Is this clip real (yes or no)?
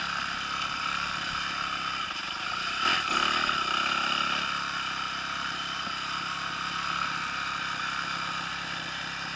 yes